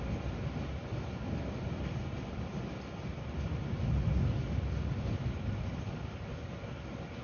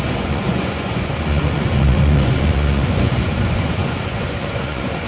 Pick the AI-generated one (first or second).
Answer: second